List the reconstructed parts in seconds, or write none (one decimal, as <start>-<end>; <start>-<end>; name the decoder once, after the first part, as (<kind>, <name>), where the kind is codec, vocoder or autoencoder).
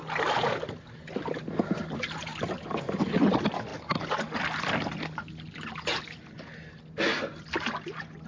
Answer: none